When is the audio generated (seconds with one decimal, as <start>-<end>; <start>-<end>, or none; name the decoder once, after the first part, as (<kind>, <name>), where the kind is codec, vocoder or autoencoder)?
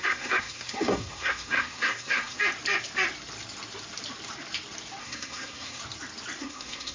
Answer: 0.0-2.4 (codec, SNAC); 5.0-5.8; 6.4-6.9